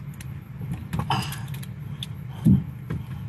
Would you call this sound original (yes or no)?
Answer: yes